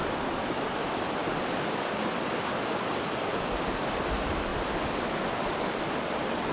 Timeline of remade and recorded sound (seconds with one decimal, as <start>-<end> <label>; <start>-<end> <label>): 0.0-4.5 remade; 4.5-5.1 recorded; 5.1-6.5 remade